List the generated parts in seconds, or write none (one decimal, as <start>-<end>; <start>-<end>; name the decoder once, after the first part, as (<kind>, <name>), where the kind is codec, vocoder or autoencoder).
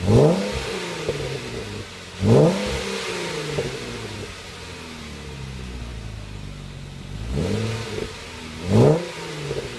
none